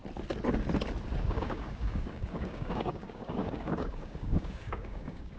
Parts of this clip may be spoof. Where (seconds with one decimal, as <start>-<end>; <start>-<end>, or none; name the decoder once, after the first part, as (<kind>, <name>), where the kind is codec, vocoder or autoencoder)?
1.2-5.4 (codec, DAC)

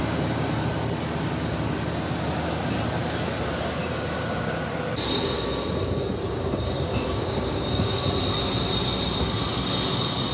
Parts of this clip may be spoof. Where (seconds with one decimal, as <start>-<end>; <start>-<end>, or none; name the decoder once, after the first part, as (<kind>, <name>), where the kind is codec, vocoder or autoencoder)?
0.0-0.5 (codec, DAC); 3.8-4.5; 6.2-8.1

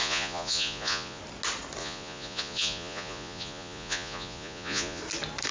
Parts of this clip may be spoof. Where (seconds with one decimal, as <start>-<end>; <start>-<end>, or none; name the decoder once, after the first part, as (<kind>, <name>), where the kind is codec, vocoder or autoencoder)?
0.0-1.2 (vocoder, Vocos); 1.8-5.0

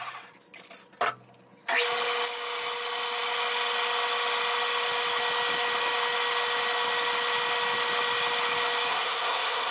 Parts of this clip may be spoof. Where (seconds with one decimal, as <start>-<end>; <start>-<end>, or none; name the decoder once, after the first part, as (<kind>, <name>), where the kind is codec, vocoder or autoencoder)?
8.9-9.7 (codec, SNAC)

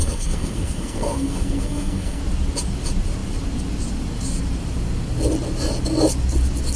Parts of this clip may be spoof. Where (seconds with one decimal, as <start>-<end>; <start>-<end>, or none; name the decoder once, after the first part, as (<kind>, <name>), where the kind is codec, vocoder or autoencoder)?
0.0-2.2 (codec, SNAC)

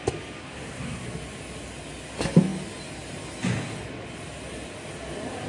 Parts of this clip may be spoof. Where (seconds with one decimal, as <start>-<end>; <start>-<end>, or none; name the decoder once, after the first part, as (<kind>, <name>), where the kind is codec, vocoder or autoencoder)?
0.4-1.0 (codec, SNAC)

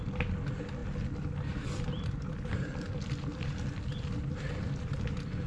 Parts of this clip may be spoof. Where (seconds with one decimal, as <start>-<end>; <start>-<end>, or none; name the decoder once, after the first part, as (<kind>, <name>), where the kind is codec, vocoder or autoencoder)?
none